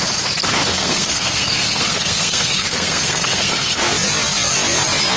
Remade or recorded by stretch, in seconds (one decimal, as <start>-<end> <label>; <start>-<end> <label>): 0.0-0.7 recorded; 0.7-3.8 remade; 3.8-5.2 recorded